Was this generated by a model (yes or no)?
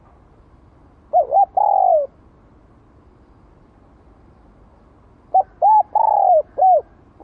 no